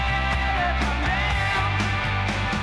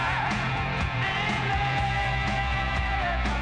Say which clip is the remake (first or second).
second